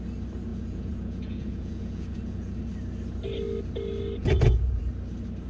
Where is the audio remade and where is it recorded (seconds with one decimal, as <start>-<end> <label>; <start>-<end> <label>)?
0.0-0.5 recorded; 0.5-2.6 remade; 2.6-4.2 recorded; 4.2-4.8 remade; 4.8-5.5 recorded